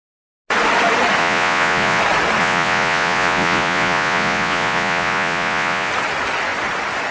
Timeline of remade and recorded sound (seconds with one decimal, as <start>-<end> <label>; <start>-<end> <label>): 0.0-1.2 recorded; 1.2-2.0 remade; 2.0-2.4 recorded; 2.4-5.9 remade; 5.9-7.1 recorded